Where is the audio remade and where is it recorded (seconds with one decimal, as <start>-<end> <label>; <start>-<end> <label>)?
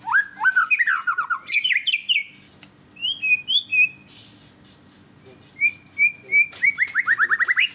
0.0-7.7 recorded